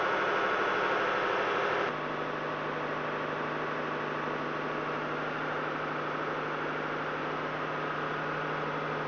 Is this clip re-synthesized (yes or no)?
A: no